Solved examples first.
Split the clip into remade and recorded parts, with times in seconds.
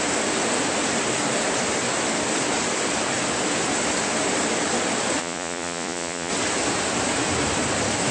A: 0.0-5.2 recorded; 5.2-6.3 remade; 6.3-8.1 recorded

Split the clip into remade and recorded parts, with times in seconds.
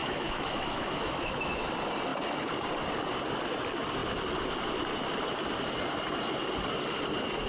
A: 0.0-1.7 remade; 1.7-7.5 recorded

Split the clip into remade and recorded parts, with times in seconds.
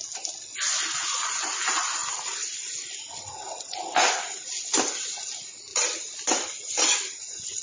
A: 0.0-2.0 recorded; 2.0-4.5 remade; 4.5-7.6 recorded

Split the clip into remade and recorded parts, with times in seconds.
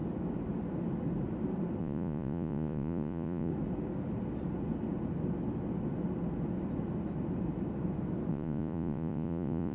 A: 0.0-1.8 recorded; 1.8-3.5 remade; 3.5-8.3 recorded; 8.3-9.7 remade